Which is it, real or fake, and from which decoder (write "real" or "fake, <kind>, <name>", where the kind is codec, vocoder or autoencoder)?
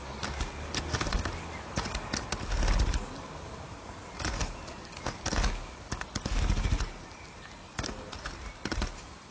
real